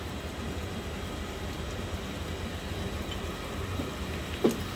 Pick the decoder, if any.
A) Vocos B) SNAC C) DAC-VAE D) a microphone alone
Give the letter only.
D